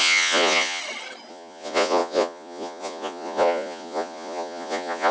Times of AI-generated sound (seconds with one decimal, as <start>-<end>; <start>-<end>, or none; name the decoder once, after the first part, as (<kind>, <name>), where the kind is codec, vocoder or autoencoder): 0.0-0.8 (vocoder, Vocos); 1.3-5.1